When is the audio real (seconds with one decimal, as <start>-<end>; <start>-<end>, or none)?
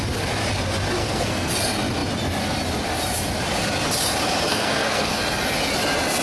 0.0-1.0; 1.5-4.5; 5.2-6.2